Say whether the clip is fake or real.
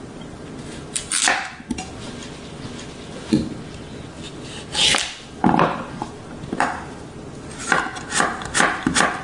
real